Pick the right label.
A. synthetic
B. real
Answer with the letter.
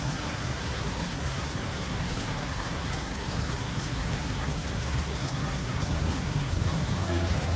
A